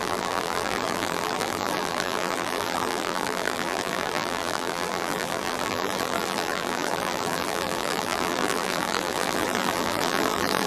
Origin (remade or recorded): remade